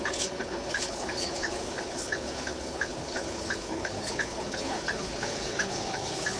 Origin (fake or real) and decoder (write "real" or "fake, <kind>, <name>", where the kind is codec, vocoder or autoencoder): fake, codec, HILCodec